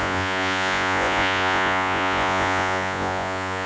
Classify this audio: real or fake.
fake